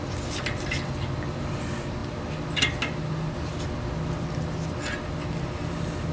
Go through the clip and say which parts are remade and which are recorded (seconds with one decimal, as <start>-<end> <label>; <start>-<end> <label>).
0.0-6.1 recorded